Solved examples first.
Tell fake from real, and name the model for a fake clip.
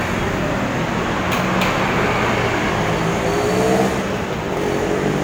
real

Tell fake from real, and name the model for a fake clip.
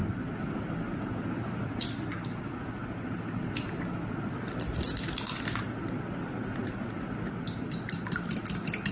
real